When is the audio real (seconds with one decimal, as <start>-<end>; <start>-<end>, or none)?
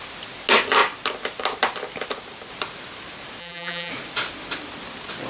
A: 0.0-3.4; 3.9-5.3